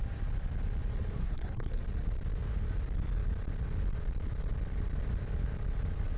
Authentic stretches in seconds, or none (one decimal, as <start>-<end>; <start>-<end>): 0.0-1.2; 1.8-6.2